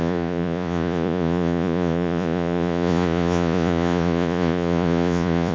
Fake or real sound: fake